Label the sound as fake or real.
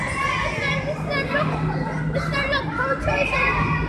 real